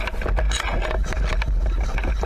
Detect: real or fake real